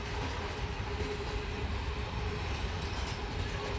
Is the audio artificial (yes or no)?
no